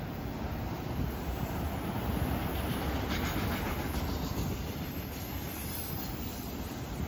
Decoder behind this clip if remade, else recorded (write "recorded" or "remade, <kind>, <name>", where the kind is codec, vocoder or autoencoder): recorded